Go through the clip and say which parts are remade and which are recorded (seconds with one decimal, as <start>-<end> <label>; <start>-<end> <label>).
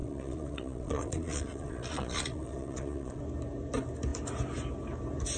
0.0-3.2 remade; 3.2-5.4 recorded